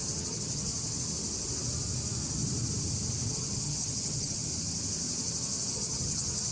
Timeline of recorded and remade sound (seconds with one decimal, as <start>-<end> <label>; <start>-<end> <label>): 0.0-0.7 remade; 0.7-3.3 recorded; 3.3-4.5 remade; 4.5-5.7 recorded; 5.7-6.5 remade